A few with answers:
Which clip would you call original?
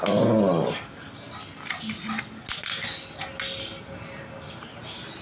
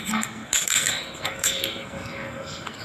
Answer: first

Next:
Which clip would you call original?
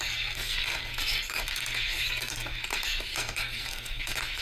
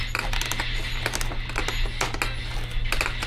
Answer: second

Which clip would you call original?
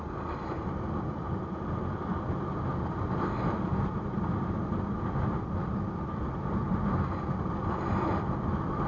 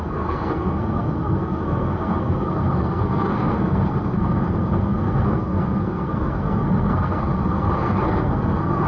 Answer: first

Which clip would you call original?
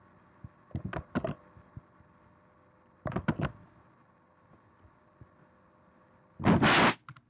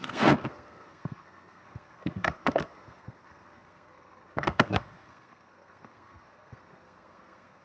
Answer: first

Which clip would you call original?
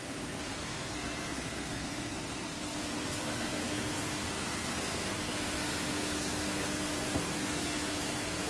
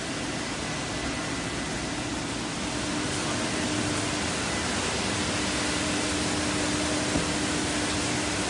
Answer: second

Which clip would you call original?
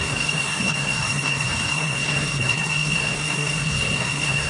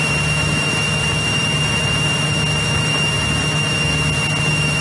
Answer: second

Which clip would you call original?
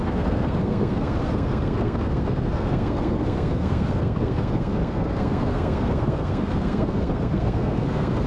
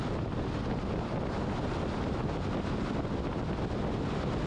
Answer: second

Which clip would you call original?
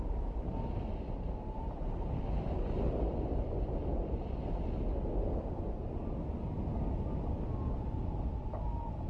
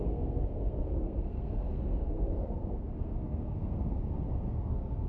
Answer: first